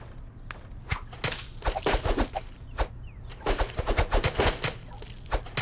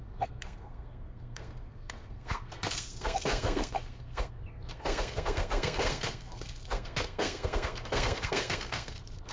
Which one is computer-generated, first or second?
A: second